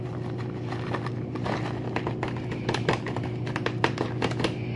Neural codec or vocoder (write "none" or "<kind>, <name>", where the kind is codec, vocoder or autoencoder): vocoder, BigVGAN v2